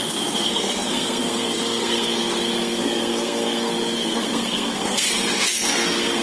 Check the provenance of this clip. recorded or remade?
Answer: remade